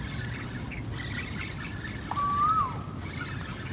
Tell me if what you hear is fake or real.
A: real